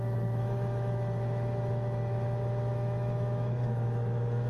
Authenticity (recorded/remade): remade